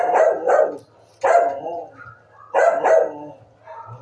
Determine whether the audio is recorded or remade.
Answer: recorded